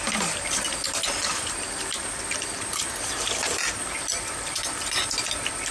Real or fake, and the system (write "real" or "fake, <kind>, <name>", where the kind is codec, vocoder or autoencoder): real